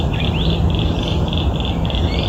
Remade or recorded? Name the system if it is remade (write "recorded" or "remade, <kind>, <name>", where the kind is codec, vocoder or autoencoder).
recorded